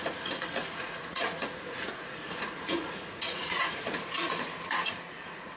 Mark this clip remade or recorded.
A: remade